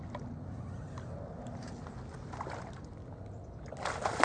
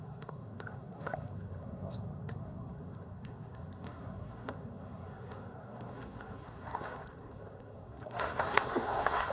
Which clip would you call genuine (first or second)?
first